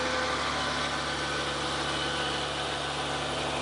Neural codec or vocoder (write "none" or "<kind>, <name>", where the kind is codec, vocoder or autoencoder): none